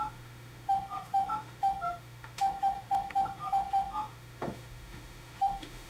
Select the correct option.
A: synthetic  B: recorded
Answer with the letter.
A